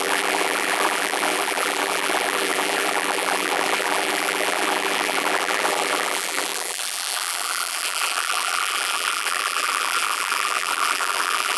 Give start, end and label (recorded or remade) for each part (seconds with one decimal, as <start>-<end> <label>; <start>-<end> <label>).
0.0-11.6 remade